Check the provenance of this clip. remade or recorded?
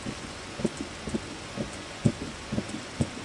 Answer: remade